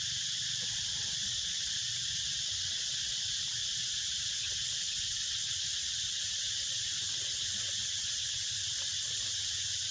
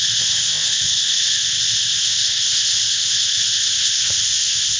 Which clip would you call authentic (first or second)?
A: first